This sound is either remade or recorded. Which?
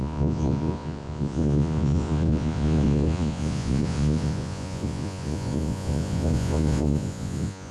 remade